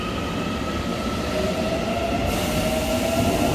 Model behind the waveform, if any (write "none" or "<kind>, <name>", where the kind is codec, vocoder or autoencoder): none